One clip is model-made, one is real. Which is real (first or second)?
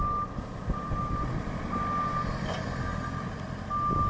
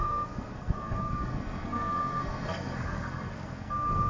first